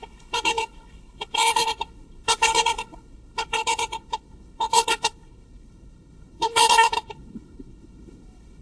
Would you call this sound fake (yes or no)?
yes